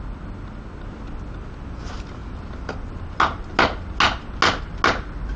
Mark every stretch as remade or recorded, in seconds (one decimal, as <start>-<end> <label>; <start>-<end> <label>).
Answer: 0.0-5.4 recorded